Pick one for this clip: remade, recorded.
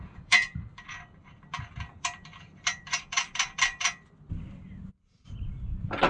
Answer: remade